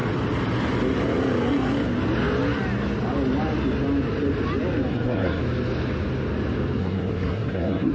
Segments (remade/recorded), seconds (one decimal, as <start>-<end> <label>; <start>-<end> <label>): 0.0-4.9 recorded; 4.9-5.4 remade; 5.4-6.8 recorded; 6.8-7.9 remade